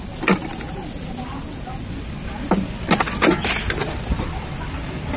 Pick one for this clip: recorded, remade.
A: recorded